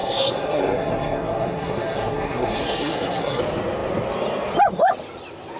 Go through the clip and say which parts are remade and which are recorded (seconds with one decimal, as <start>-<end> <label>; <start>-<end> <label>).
0.0-3.4 remade; 3.4-5.6 recorded